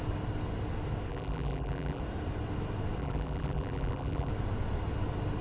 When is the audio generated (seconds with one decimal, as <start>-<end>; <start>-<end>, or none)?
1.1-2.0; 3.0-4.3